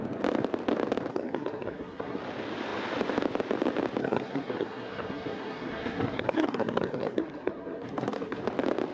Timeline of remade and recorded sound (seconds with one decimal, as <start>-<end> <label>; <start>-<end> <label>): 0.0-1.1 recorded; 1.1-2.2 remade; 2.2-4.0 recorded; 4.0-8.4 remade; 8.4-8.9 recorded